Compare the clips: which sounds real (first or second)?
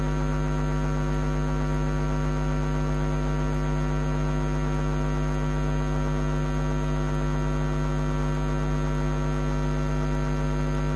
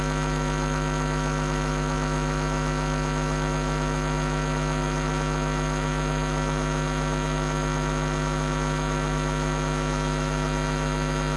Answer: first